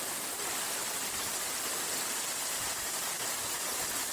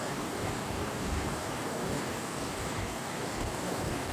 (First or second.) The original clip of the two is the first